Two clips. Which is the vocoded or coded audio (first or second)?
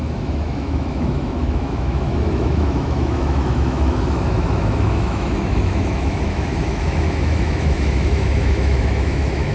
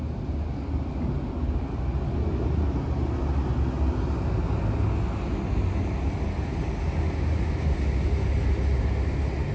first